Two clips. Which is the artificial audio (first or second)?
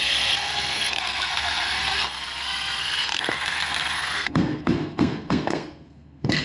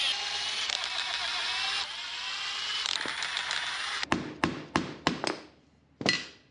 first